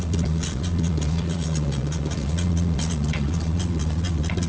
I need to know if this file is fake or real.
fake